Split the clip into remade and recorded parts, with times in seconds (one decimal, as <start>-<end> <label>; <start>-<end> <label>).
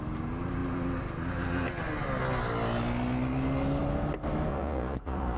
0.0-4.5 recorded; 4.5-5.4 remade